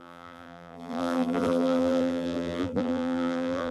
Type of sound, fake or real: fake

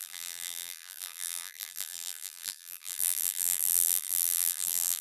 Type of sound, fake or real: fake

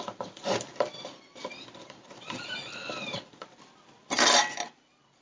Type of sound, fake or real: fake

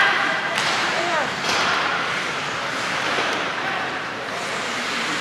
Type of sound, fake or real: fake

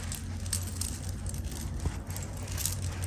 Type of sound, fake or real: real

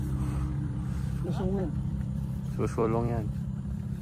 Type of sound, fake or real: fake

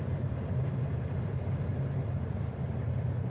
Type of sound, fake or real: fake